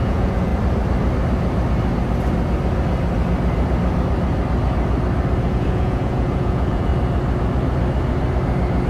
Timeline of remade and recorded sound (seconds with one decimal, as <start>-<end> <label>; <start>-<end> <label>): 0.0-0.5 remade; 0.5-5.5 recorded; 5.5-6.9 remade; 6.9-8.9 recorded